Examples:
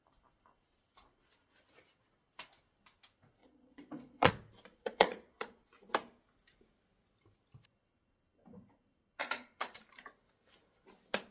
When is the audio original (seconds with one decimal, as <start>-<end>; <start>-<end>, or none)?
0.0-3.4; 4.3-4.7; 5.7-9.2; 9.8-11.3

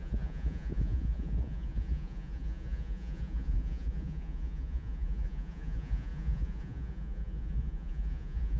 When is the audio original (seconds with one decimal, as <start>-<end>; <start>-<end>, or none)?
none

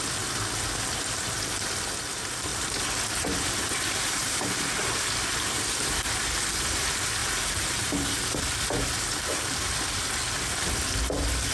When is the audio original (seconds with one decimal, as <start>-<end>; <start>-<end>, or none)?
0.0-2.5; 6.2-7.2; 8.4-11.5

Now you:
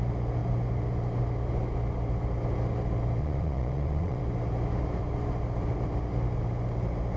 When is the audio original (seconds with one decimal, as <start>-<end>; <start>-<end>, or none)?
0.0-3.2; 4.2-7.2